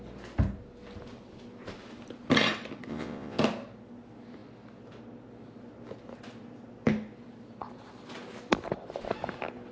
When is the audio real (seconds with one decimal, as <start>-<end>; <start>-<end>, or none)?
0.0-2.9; 3.4-9.7